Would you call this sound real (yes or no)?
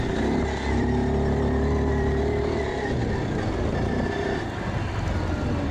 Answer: yes